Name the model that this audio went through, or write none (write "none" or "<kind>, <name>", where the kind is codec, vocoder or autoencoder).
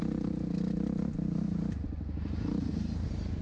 none